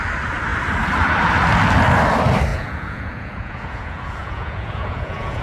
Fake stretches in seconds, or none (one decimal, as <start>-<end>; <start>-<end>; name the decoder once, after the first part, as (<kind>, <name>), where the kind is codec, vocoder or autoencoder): 2.5-5.4 (vocoder, Vocos)